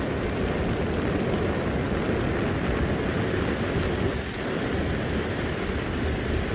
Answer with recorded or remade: recorded